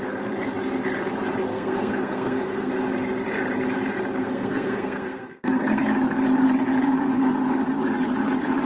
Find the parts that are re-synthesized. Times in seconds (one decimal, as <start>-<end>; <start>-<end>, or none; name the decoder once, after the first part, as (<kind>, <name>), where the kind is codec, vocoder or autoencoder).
1.5-2.7 (codec, SNAC); 4.2-5.8